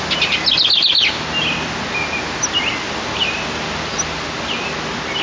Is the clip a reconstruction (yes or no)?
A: no